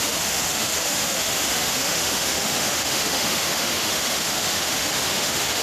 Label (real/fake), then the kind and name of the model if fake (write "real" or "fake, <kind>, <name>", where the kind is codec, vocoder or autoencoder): fake, autoencoder, DAC-VAE